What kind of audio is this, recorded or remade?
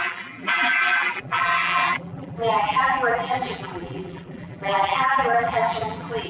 remade